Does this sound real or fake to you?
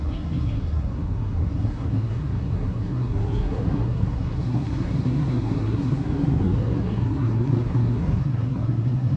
fake